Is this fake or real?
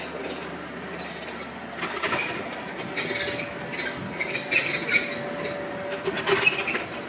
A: real